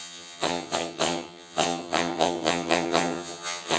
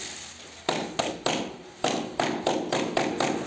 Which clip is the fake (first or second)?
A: first